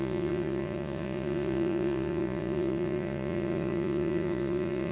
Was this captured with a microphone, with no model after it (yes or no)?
no